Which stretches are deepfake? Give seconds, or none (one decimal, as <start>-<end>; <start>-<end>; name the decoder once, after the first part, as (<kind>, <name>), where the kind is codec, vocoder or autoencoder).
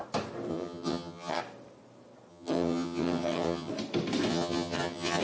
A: 0.5-1.4 (vocoder, HiFi-GAN); 2.3-3.7; 4.3-5.2